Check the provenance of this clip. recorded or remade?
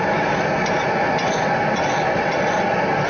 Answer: recorded